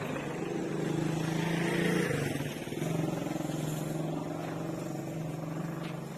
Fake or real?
real